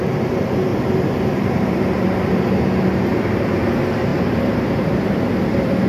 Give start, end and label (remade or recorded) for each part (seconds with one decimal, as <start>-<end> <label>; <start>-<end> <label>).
0.0-0.7 recorded; 0.7-1.9 remade; 1.9-5.9 recorded